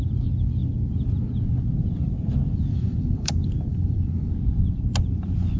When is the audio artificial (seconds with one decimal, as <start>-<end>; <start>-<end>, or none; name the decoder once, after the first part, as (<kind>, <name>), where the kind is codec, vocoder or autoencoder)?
2.7-3.3 (vocoder, BigVGAN v2); 3.7-4.3